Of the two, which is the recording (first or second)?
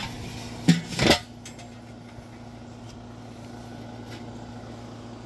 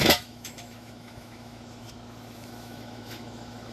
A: first